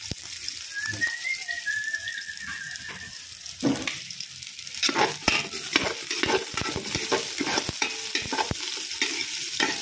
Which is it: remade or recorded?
remade